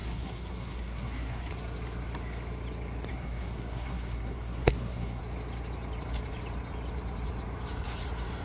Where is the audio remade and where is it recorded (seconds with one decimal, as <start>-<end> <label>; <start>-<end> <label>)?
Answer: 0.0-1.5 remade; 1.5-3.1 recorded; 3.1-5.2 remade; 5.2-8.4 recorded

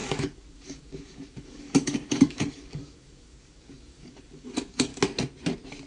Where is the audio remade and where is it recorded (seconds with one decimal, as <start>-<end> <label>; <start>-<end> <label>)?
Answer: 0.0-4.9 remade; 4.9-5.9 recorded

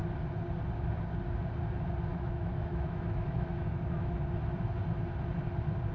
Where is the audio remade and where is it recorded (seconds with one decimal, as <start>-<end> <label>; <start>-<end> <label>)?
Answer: 0.0-2.1 recorded; 2.1-4.2 remade; 4.2-5.9 recorded